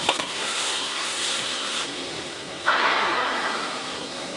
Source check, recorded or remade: remade